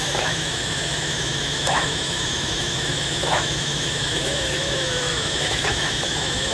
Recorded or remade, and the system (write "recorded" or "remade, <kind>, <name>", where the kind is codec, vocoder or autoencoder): remade, autoencoder, DAC-VAE